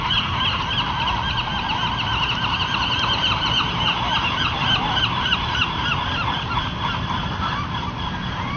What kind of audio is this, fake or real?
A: real